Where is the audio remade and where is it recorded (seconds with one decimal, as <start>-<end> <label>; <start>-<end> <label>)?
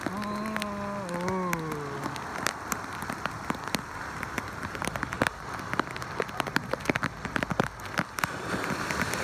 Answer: 0.0-9.2 recorded